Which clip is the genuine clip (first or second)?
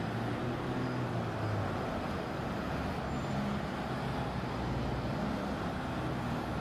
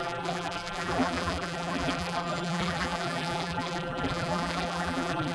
first